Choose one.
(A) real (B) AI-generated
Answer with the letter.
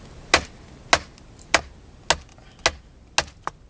A